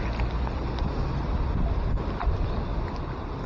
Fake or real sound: real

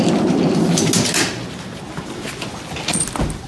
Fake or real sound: real